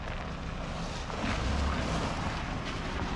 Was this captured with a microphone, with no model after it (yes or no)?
yes